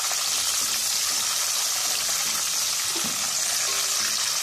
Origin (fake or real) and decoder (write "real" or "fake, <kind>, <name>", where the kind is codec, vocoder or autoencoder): real